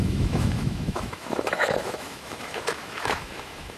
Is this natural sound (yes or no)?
no